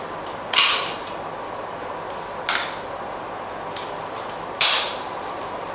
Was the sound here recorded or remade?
recorded